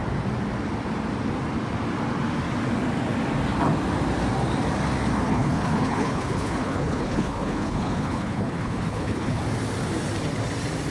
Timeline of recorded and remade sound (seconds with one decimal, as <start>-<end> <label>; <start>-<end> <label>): 0.0-5.3 recorded; 5.3-9.4 remade; 9.4-10.9 recorded